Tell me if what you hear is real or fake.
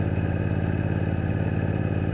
real